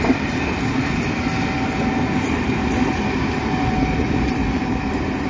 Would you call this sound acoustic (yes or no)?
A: yes